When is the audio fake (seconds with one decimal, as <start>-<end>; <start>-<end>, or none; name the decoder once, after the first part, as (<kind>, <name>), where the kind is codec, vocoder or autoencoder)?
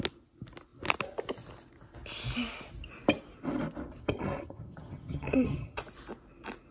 4.0-5.8 (vocoder, HiFi-GAN)